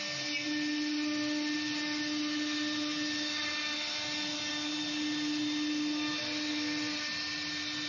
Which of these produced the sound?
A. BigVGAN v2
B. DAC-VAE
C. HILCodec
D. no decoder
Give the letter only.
D